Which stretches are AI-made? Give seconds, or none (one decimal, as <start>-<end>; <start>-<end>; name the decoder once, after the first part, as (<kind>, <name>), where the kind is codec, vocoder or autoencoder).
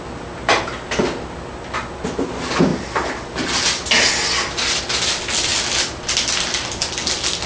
none